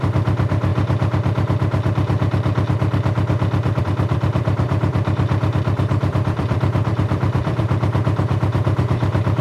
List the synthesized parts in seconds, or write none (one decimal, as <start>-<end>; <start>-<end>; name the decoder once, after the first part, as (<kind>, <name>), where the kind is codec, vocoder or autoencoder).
0.0-0.7 (vocoder, BigVGAN v2); 3.8-9.4